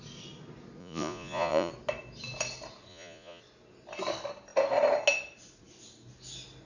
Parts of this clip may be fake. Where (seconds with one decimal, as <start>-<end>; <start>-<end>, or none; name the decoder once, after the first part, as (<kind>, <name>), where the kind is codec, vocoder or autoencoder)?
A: 0.8-1.7 (vocoder, Vocos); 2.9-3.4